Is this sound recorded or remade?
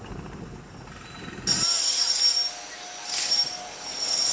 recorded